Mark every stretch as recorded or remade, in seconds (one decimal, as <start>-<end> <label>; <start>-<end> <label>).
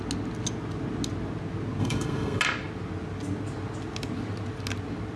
0.0-1.8 recorded; 1.8-2.4 remade; 2.4-5.2 recorded